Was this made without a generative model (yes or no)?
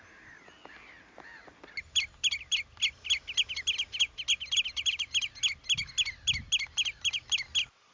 yes